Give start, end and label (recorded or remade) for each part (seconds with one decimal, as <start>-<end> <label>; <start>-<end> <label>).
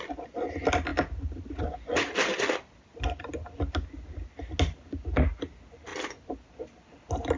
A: 0.0-7.4 recorded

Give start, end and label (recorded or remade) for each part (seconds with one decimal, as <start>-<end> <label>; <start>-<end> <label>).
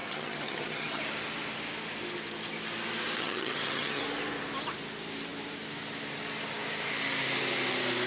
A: 0.0-1.0 remade; 1.0-3.2 recorded; 3.2-4.0 remade; 4.0-8.1 recorded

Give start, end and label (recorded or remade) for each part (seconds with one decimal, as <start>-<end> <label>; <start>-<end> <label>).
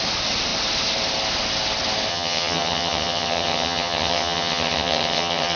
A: 0.0-2.1 recorded; 2.1-5.6 remade